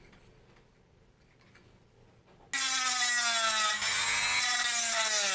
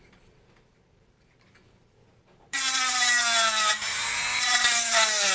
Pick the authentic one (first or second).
first